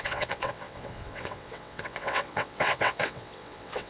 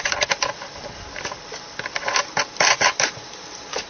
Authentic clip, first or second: second